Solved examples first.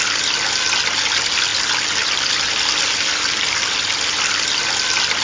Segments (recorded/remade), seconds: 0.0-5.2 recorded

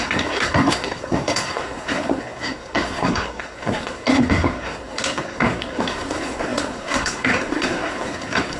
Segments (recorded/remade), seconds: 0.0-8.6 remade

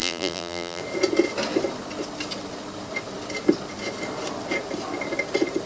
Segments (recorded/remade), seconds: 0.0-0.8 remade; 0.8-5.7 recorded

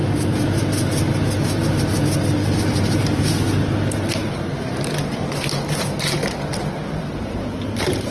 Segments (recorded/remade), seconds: 0.0-4.2 recorded; 4.2-8.1 remade